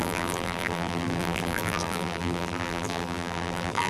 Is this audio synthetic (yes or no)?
yes